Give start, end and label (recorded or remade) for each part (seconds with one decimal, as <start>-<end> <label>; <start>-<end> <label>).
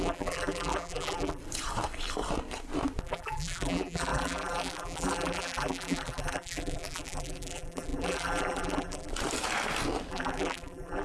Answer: 0.0-1.4 remade; 1.4-3.0 recorded; 3.0-9.1 remade; 9.1-10.1 recorded; 10.1-11.0 remade